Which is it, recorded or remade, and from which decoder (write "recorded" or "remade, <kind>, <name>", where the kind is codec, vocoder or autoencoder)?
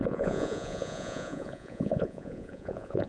remade, vocoder, Vocos